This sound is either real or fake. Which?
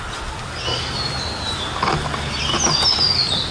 real